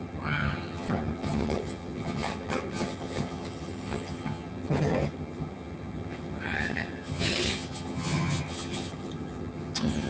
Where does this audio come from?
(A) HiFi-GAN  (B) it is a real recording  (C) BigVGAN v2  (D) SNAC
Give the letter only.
A